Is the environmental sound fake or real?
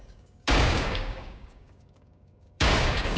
fake